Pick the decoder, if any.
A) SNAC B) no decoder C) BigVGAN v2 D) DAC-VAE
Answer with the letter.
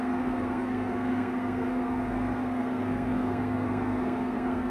A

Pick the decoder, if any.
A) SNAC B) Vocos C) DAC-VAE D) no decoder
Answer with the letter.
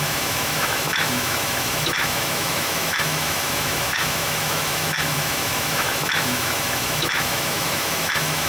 C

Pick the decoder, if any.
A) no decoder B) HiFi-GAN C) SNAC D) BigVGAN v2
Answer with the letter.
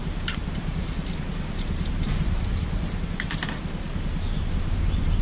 D